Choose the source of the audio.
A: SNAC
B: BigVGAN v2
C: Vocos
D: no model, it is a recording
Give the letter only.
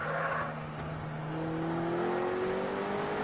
D